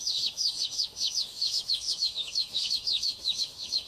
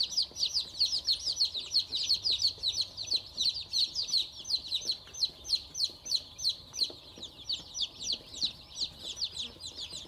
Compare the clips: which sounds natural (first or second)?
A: second